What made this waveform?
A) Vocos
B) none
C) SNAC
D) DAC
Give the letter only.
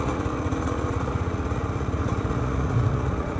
A